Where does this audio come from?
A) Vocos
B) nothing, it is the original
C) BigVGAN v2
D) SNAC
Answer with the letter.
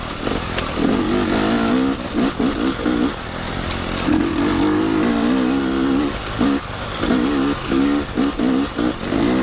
B